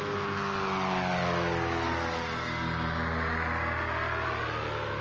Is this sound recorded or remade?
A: recorded